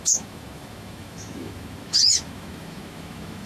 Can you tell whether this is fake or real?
fake